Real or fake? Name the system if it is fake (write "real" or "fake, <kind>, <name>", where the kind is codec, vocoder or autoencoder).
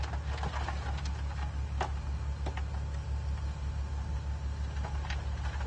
real